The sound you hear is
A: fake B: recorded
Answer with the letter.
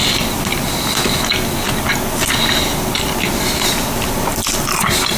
B